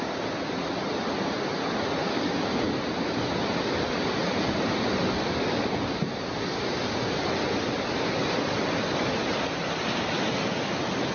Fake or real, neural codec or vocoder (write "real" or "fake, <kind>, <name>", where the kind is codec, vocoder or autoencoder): real